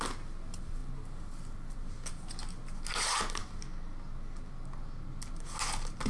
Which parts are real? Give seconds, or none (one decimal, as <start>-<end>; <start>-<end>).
0.0-6.1